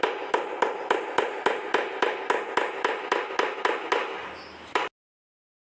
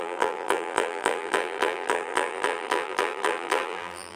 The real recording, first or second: first